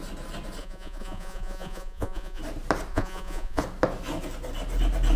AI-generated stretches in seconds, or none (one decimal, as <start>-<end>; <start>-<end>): 0.6-2.4; 2.9-3.6